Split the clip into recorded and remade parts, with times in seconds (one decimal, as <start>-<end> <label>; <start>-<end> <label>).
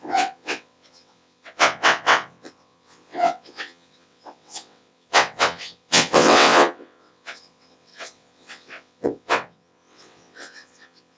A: 0.0-11.2 remade